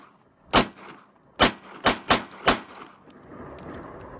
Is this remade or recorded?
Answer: recorded